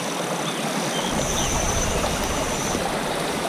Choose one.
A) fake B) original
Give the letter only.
A